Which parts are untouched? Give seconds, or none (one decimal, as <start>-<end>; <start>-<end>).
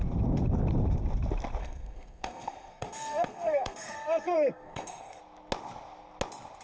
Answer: 0.0-1.6; 5.2-6.6